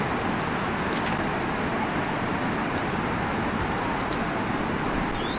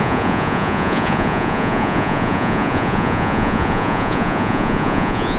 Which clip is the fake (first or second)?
second